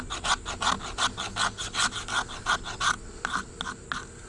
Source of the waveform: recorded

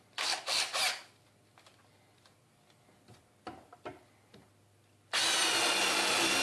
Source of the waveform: recorded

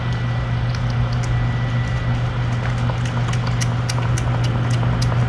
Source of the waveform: recorded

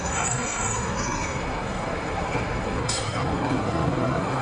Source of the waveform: remade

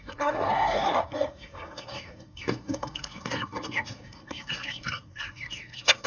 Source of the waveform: remade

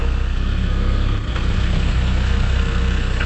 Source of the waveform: remade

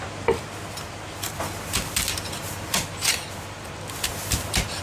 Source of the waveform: recorded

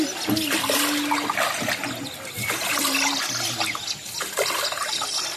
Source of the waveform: recorded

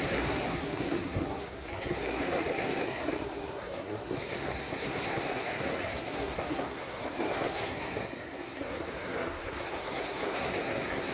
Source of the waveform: remade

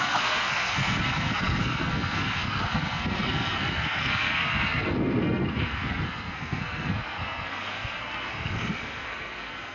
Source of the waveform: remade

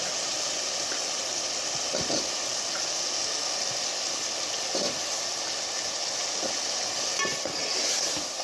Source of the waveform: recorded